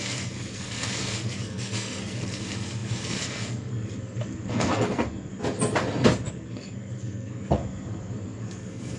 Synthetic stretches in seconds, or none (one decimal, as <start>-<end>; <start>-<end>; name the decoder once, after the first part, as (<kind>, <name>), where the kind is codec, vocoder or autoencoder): 0.0-5.3 (codec, SNAC); 6.3-9.0